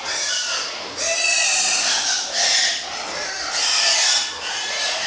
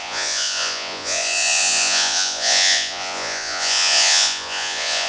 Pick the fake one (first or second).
second